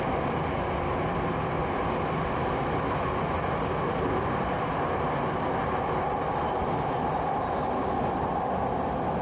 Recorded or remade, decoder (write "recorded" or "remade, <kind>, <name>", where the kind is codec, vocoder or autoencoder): recorded